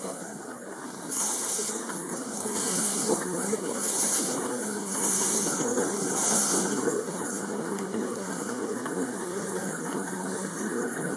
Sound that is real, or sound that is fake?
fake